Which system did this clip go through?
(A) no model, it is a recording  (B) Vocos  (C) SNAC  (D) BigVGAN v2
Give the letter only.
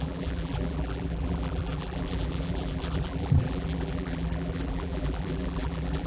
D